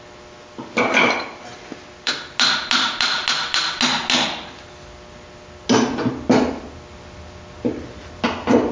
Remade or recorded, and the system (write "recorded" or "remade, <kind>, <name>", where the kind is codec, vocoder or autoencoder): recorded